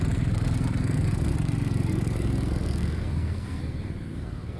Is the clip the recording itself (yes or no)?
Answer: no